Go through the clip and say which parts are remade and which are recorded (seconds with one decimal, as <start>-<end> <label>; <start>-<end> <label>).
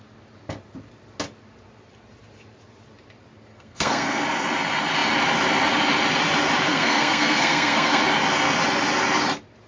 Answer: 0.0-3.5 recorded; 3.5-4.2 remade; 4.2-6.7 recorded; 6.7-8.0 remade; 8.0-9.7 recorded